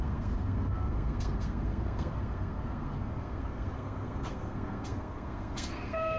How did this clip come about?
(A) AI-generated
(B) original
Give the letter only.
A